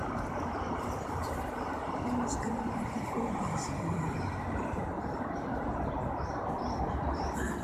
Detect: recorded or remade remade